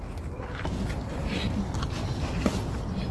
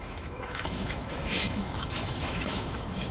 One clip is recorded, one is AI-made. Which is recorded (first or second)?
first